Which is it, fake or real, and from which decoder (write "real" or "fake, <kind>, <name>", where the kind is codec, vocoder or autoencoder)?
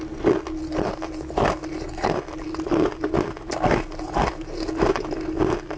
real